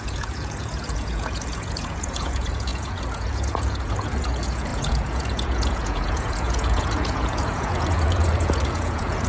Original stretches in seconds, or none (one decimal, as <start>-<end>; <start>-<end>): none